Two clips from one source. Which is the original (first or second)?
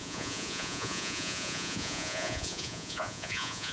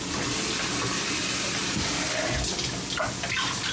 second